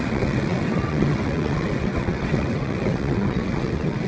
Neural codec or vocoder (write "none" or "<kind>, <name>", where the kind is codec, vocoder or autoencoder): vocoder, WaveNeXt